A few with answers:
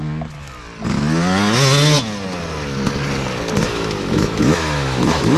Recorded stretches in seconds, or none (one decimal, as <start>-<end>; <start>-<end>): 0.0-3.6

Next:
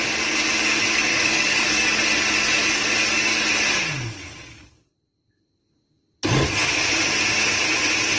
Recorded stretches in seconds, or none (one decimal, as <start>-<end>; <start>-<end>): 0.0-1.1; 2.0-8.2

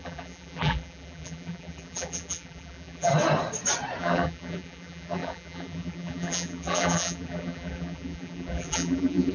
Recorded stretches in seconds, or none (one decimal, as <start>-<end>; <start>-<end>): 3.1-4.0

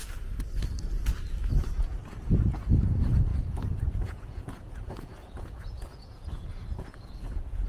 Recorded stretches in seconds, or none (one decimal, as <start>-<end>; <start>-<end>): 0.0-2.1

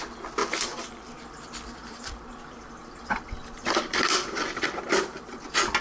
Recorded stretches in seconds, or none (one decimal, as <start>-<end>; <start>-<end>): 0.0-0.4; 1.1-1.8; 5.3-5.8

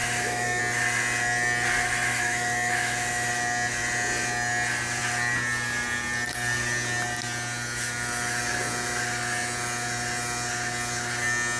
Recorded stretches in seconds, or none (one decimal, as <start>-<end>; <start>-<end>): 0.6-2.1; 3.3-11.6